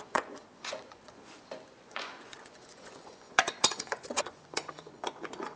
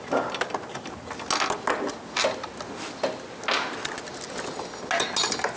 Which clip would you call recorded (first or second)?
second